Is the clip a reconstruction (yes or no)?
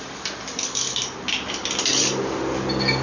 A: no